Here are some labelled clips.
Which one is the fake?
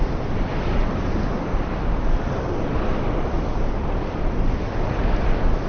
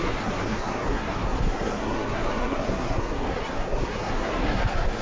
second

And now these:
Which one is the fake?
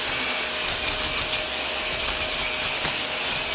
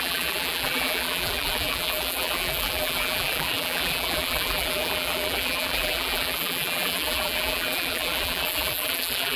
second